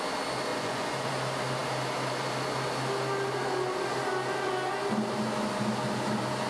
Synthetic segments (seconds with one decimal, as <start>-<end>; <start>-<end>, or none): 0.5-1.1